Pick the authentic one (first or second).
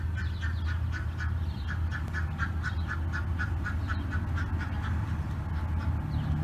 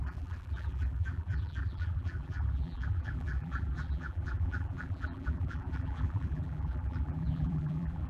first